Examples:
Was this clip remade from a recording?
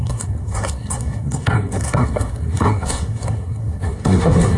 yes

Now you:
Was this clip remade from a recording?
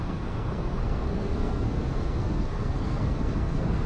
yes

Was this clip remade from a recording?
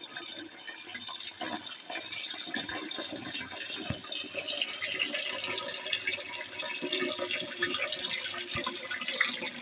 no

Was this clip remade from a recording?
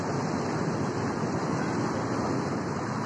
no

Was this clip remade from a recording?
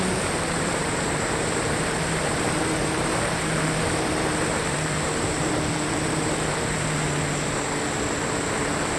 yes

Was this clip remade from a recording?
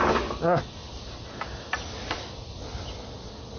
no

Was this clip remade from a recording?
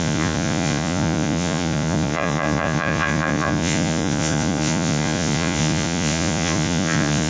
yes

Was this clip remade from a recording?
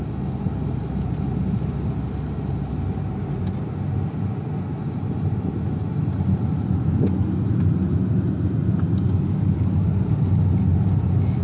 no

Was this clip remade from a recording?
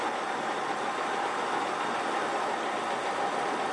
no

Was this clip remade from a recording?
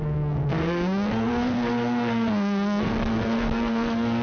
yes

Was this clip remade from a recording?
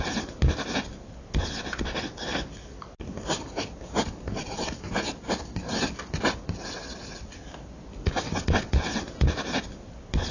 no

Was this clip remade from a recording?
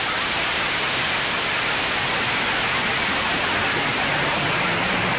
no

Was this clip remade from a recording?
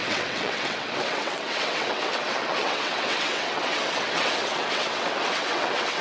yes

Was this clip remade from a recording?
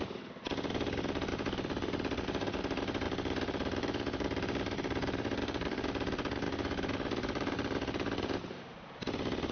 yes